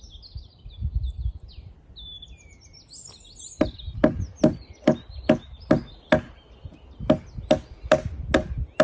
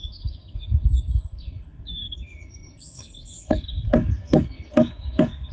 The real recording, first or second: first